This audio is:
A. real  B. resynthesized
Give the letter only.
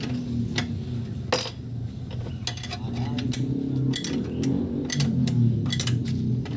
A